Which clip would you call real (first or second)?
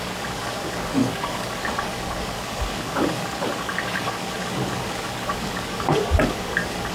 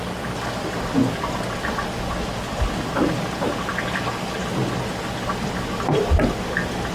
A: second